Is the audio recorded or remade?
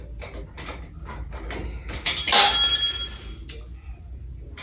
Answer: recorded